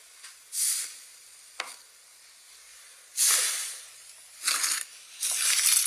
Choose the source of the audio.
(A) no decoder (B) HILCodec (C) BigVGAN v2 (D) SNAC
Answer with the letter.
A